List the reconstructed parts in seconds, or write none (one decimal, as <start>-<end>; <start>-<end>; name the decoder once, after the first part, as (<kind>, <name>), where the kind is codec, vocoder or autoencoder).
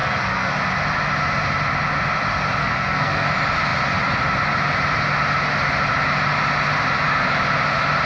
0.0-0.5 (codec, SNAC); 2.6-3.3